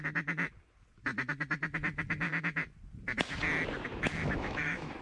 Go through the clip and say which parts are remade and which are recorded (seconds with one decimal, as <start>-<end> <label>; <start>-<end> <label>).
0.0-3.9 recorded; 3.9-5.0 remade